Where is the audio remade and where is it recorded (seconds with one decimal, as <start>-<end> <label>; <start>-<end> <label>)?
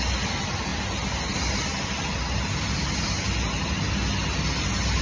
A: 0.0-5.0 recorded